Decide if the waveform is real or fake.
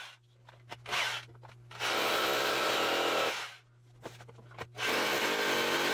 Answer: real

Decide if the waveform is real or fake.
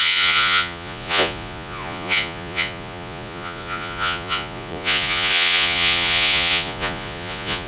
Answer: fake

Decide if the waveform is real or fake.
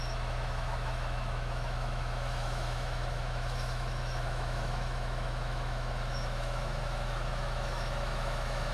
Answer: fake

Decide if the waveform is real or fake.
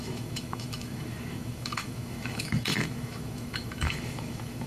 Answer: fake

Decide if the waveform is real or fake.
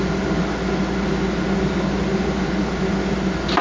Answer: real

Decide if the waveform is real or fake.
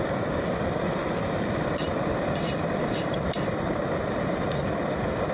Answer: fake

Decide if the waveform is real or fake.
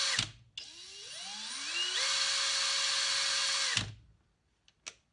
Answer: real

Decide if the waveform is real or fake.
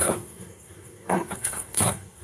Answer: fake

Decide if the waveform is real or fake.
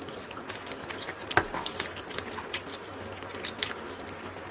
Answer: real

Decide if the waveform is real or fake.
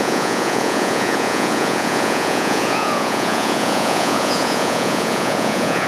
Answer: fake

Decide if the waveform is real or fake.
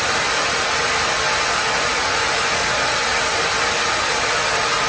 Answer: real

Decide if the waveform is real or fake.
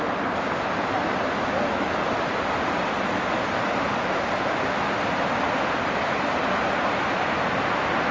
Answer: real